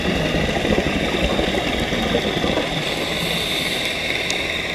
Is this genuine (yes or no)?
yes